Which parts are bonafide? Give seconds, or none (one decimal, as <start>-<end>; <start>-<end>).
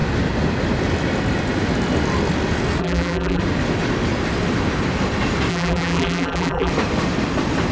0.0-2.8; 3.4-5.5; 6.7-7.7